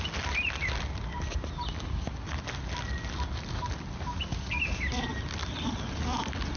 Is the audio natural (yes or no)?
yes